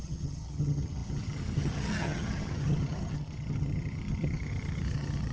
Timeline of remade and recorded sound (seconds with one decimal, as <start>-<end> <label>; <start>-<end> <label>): 0.0-5.3 remade